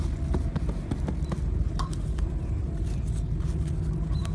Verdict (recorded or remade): recorded